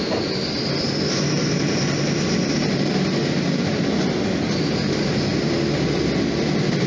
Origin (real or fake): real